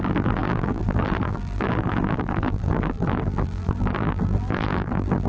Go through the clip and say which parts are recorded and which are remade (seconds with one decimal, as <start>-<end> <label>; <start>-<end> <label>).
0.0-5.3 remade